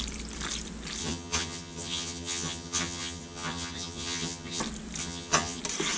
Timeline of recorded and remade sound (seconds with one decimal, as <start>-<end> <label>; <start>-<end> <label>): 0.0-1.0 recorded; 1.0-4.6 remade; 4.6-5.0 recorded; 5.0-5.6 remade; 5.6-6.0 recorded